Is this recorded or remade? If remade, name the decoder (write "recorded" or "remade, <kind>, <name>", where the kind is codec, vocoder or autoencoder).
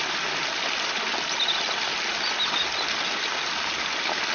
recorded